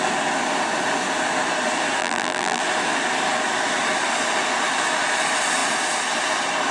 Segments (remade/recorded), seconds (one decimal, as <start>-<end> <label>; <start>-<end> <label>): 0.0-2.0 recorded; 2.0-2.6 remade; 2.6-6.7 recorded